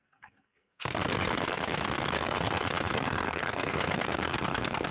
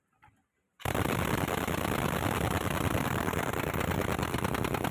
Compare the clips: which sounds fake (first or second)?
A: first